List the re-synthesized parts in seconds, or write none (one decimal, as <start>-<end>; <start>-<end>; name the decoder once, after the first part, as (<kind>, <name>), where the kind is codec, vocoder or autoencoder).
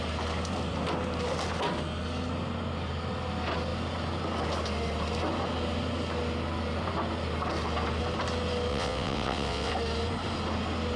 8.7-9.7 (vocoder, WaveNeXt)